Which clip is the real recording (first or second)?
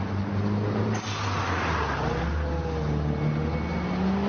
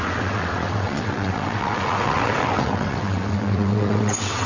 first